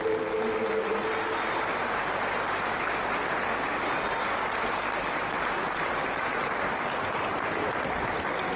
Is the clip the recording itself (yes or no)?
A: yes